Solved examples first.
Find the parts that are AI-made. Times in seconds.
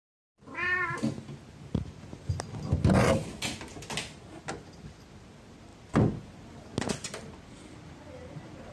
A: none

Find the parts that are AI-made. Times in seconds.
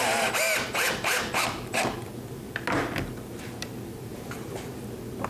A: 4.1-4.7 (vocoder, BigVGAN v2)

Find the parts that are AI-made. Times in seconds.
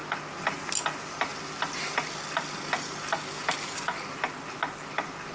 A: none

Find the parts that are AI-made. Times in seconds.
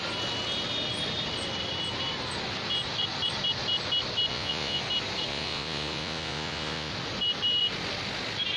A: 4.3-4.8 (vocoder, Vocos); 5.3-6.9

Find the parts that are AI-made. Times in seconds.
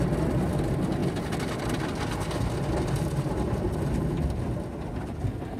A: none